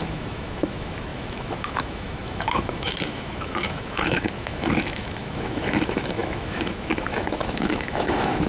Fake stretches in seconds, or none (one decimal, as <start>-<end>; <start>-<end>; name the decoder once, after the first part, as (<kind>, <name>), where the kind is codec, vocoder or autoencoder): 0.0-8.5 (autoencoder, DAC-VAE)